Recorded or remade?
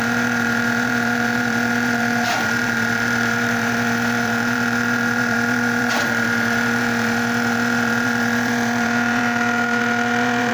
remade